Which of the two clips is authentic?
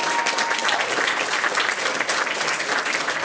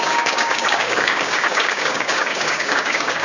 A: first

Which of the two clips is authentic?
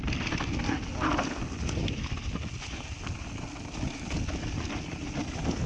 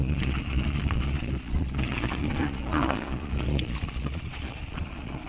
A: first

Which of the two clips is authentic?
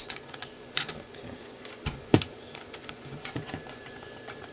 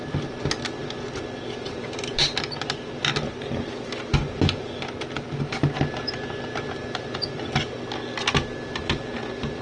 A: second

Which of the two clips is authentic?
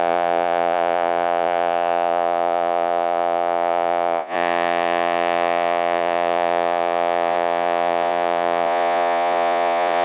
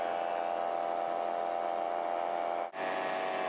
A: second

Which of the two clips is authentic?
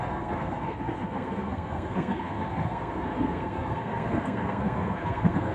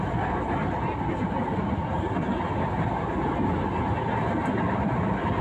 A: second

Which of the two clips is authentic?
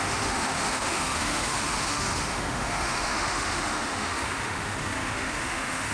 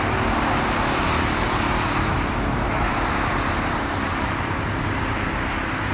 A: second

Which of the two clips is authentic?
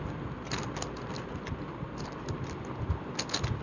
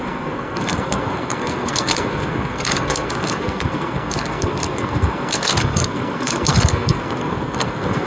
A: first